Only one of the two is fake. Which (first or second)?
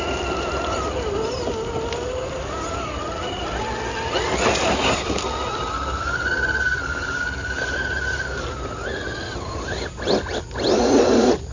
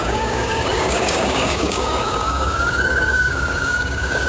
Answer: second